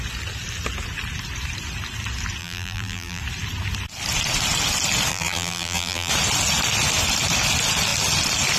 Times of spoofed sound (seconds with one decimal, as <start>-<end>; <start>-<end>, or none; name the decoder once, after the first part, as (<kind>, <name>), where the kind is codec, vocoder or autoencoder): 2.4-3.2 (vocoder, BigVGAN v2); 5.1-6.1